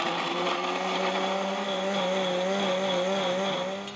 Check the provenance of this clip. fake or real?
real